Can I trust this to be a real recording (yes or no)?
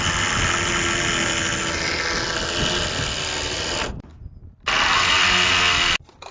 yes